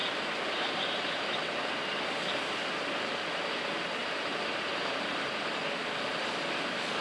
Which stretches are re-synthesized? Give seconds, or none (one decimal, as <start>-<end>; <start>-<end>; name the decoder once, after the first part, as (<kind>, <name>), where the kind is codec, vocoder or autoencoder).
0.0-2.5 (vocoder, BigVGAN v2); 4.0-5.5